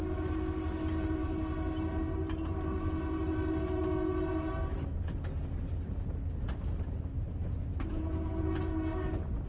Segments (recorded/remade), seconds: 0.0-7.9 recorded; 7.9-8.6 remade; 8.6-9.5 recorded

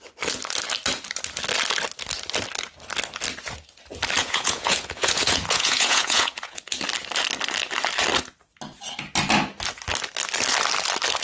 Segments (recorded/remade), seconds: 0.0-4.2 recorded; 4.2-6.8 remade; 6.8-11.2 recorded

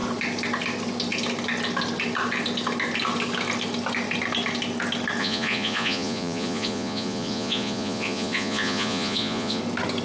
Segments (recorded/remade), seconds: 0.0-5.2 recorded; 5.2-9.6 remade; 9.6-10.0 recorded

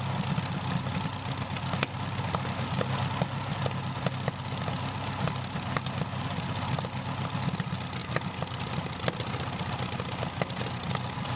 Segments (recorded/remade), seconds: 0.0-11.4 recorded

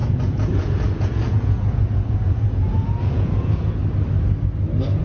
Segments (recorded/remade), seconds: 0.0-3.8 remade; 3.8-5.0 recorded

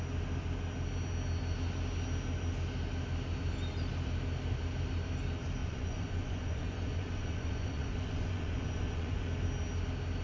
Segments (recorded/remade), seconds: 0.0-5.6 recorded; 5.6-9.2 remade; 9.2-10.2 recorded